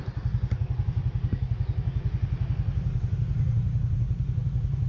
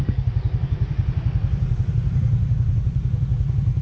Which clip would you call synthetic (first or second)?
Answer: second